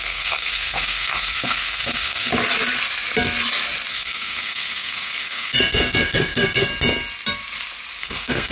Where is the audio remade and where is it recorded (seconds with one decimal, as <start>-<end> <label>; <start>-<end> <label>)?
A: 0.0-2.3 remade; 2.3-3.9 recorded; 3.9-6.7 remade; 6.7-8.0 recorded; 8.0-8.5 remade